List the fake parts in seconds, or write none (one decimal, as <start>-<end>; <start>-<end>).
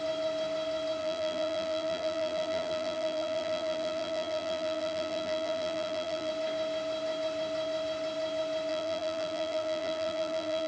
1.0-6.3; 8.7-10.7